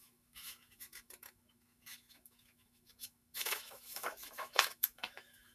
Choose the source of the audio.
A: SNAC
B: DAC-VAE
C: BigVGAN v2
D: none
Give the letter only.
B